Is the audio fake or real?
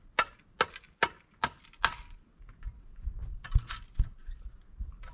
real